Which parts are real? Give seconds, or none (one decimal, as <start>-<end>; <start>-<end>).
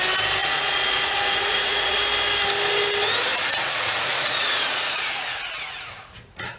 0.0-0.4; 2.0-3.3